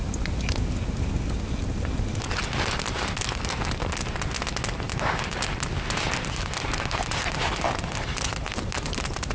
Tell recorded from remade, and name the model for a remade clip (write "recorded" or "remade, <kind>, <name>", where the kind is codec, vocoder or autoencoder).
recorded